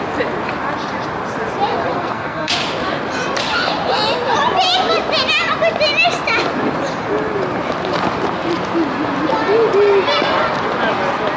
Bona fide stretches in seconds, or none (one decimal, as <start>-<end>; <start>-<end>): 0.0-1.9; 2.5-11.4